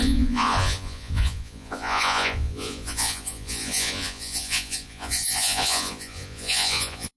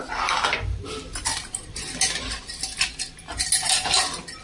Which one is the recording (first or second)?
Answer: second